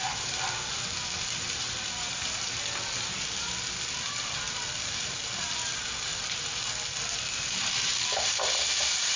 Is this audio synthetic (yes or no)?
no